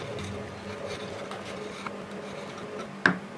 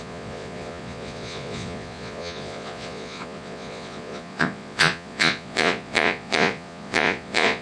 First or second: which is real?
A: first